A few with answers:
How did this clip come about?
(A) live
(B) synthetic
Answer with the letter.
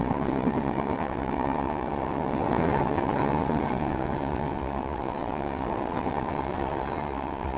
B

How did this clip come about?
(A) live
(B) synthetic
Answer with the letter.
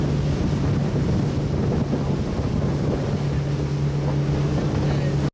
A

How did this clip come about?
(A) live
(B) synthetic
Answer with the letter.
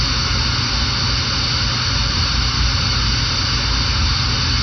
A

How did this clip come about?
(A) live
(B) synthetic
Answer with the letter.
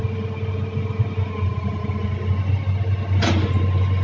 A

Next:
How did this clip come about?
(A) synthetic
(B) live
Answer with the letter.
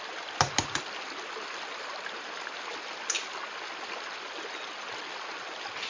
B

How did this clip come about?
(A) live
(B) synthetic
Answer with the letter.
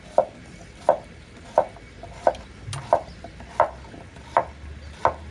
B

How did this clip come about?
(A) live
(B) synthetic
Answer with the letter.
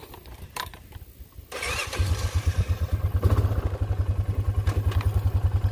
A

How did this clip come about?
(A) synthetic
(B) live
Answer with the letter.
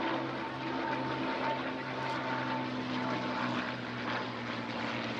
B